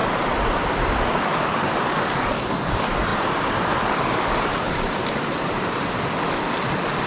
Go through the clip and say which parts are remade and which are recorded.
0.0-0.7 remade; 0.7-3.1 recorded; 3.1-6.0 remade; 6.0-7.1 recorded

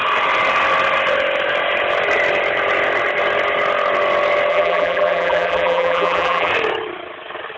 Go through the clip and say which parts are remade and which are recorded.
0.0-4.5 recorded; 4.5-6.5 remade; 6.5-7.6 recorded

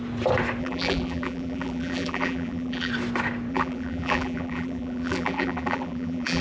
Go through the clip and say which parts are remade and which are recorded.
0.0-0.6 recorded; 0.6-2.9 remade; 2.9-3.5 recorded; 3.5-6.4 remade

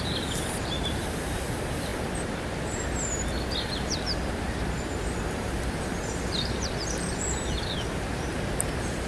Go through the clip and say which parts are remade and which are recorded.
0.0-1.9 remade; 1.9-3.7 recorded; 3.7-9.1 remade

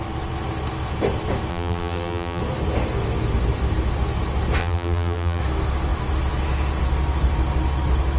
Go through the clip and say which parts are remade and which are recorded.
0.0-1.5 recorded; 1.5-2.4 remade; 2.4-4.6 recorded; 4.6-5.4 remade; 5.4-8.2 recorded